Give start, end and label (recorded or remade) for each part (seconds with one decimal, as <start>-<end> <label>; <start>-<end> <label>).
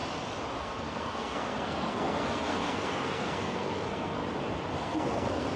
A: 0.0-0.6 recorded; 0.6-4.2 remade; 4.2-4.8 recorded; 4.8-5.6 remade